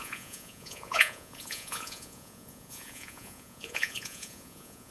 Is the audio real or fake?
fake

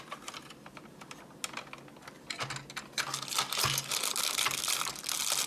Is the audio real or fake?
real